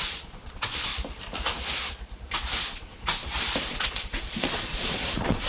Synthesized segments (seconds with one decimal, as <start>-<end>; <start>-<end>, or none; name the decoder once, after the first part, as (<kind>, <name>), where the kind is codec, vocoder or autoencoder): 0.0-0.9 (vocoder, Vocos); 2.6-3.2; 3.7-5.5